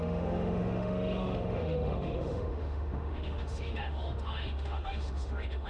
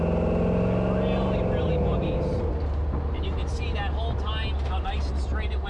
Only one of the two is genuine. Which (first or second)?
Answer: second